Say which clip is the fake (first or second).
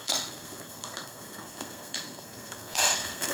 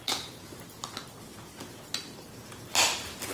first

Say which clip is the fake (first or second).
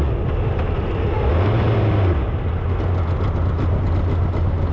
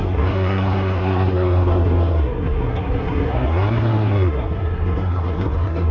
second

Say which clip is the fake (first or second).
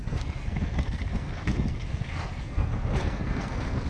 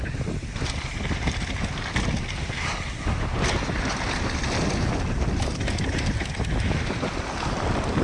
first